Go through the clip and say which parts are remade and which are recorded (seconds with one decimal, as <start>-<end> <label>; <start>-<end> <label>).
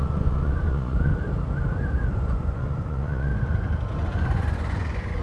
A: 0.0-1.1 remade; 1.1-2.1 recorded; 2.1-3.3 remade; 3.3-3.9 recorded; 3.9-5.2 remade